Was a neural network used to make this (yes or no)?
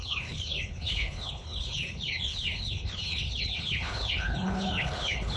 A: yes